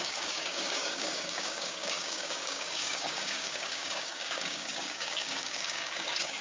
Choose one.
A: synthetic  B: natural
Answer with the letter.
A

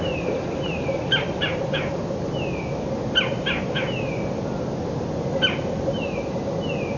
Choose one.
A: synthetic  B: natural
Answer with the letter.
B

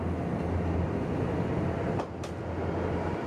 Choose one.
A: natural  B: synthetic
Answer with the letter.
A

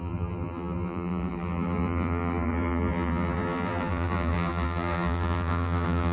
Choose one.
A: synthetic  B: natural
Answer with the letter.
A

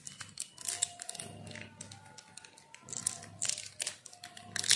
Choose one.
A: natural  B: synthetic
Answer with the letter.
A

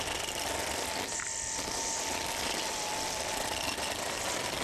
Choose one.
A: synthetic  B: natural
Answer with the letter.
B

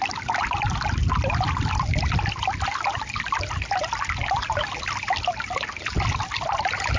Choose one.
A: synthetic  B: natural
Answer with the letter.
B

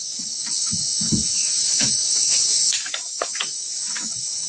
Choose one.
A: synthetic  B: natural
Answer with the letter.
A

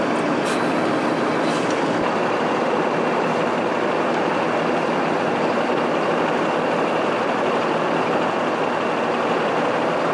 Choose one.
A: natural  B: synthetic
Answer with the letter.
A